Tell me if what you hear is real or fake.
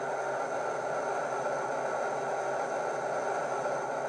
real